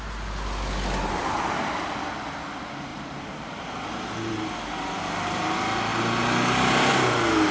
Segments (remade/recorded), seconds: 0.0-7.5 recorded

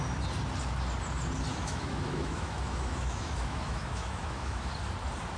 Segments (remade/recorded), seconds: 0.0-1.5 recorded; 1.5-4.7 remade; 4.7-5.4 recorded

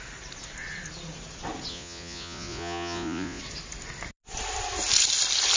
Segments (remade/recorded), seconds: 0.0-1.7 recorded; 1.7-3.4 remade; 3.4-5.6 recorded